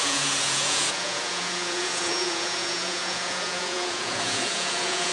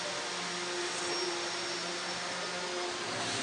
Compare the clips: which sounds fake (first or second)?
first